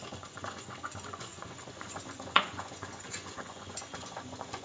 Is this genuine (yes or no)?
no